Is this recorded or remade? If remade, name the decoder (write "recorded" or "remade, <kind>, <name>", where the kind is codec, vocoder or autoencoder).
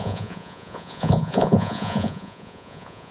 remade, vocoder, Vocos